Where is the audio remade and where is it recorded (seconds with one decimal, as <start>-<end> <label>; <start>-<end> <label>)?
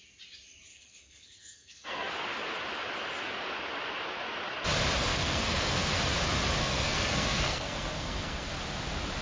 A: 0.0-0.7 recorded; 0.7-2.1 remade; 2.1-5.1 recorded; 5.1-6.0 remade; 6.0-6.6 recorded; 6.6-8.5 remade; 8.5-9.2 recorded